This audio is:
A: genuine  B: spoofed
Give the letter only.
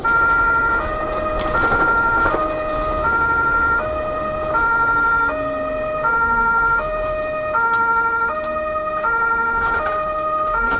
A